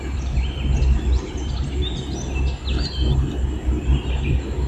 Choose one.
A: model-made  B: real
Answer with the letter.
B